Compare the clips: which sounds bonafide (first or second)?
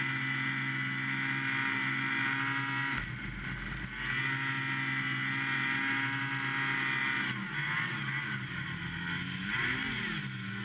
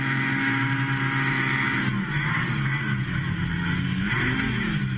first